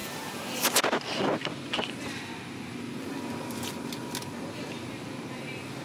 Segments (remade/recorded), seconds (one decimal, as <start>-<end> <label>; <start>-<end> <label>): 0.0-5.8 recorded